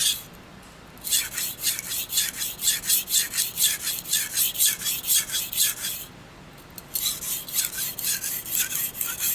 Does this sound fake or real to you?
real